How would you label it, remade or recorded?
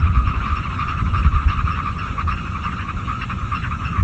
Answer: remade